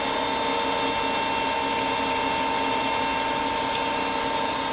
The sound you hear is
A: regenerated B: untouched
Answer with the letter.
B